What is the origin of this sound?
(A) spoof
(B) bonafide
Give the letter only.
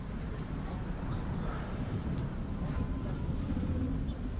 B